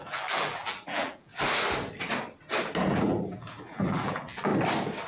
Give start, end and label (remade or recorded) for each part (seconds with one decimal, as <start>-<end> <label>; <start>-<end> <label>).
0.0-1.3 remade; 1.3-2.9 recorded; 2.9-4.5 remade; 4.5-5.1 recorded